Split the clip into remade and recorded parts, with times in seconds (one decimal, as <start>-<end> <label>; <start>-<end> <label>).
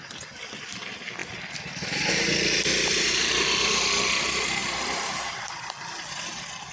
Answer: 0.0-1.2 recorded; 1.2-2.1 remade; 2.1-2.7 recorded; 2.7-4.1 remade; 4.1-4.6 recorded; 4.6-6.7 remade